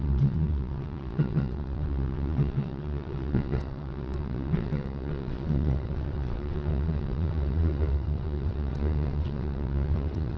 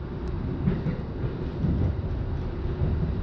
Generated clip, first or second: first